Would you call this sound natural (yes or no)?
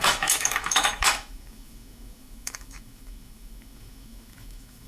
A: no